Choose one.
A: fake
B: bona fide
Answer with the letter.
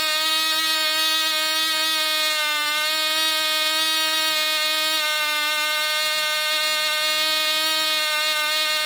B